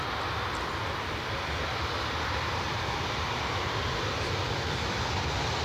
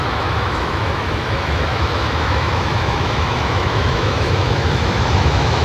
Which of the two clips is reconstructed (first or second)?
second